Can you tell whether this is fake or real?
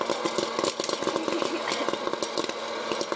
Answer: real